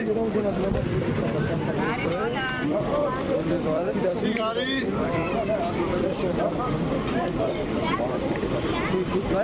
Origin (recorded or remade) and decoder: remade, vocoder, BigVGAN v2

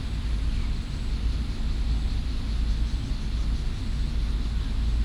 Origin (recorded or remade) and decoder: recorded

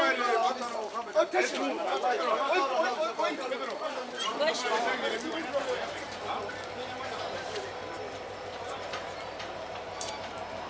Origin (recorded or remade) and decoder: remade, vocoder, BigVGAN v2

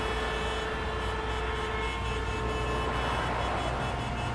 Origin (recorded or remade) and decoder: recorded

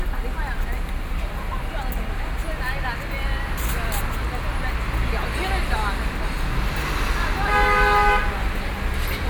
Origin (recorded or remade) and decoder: recorded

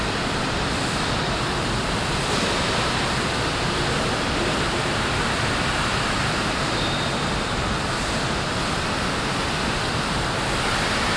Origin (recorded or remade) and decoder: remade, vocoder, BigVGAN v2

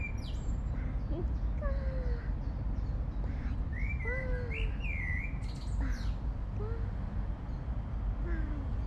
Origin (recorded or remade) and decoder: recorded